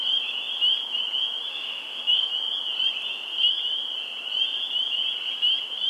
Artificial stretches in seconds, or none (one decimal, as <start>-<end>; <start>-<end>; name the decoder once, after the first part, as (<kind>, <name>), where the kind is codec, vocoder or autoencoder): 1.5-2.3 (autoencoder, DAC-VAE)